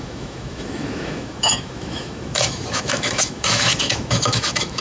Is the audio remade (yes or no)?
yes